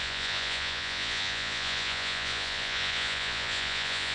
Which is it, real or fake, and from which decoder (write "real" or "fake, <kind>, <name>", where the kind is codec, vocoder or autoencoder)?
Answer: fake, vocoder, Vocos